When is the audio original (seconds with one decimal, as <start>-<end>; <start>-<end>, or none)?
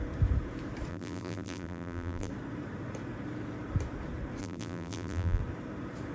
0.0-0.9; 2.3-4.4; 5.4-6.1